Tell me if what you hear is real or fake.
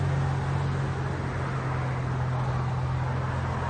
real